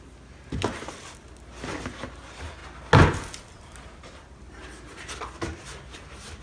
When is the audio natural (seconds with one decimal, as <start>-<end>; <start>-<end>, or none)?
0.0-6.4